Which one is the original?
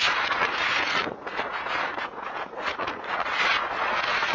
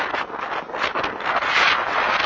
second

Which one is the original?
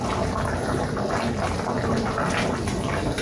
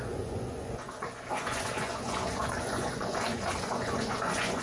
first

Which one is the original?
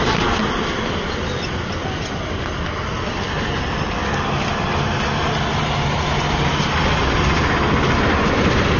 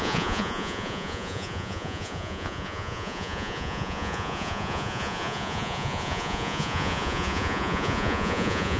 first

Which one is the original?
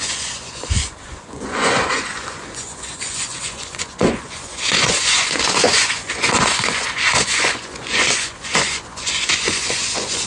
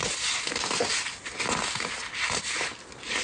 second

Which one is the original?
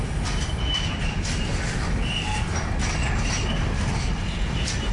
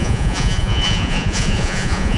first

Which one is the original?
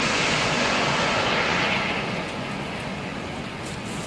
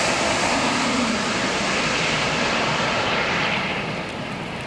second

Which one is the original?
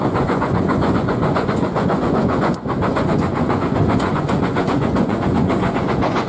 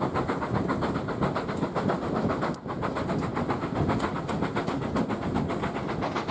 second